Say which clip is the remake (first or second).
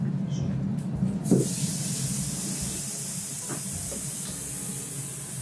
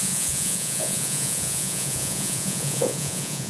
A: second